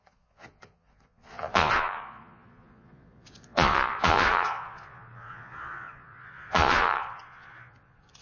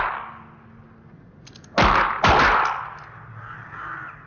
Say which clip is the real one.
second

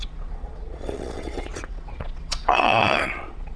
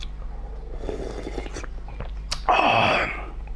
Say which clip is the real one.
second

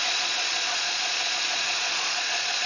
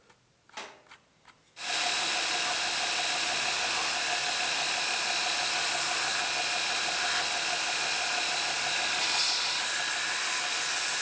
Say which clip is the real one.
second